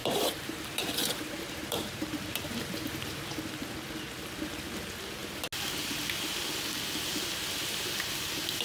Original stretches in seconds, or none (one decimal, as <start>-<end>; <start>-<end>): 3.2-8.6